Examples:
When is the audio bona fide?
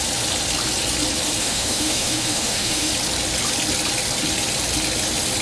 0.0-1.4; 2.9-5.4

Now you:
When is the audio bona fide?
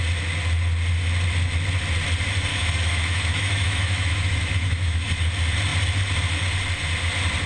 0.0-2.5; 5.1-7.5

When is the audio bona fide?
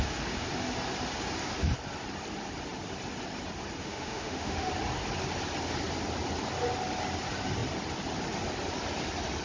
0.0-3.8; 4.7-9.4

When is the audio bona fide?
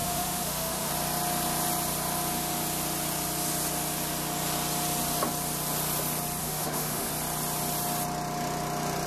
0.9-6.4; 7.1-9.1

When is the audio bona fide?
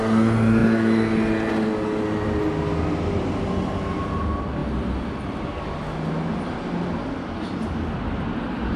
0.0-8.8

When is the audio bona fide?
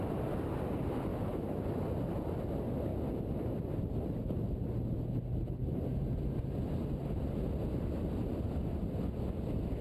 0.0-1.1; 1.7-9.8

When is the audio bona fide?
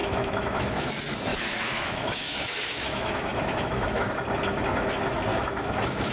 0.9-1.3; 4.1-5.3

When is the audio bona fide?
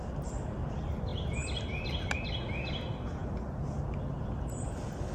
0.0-5.1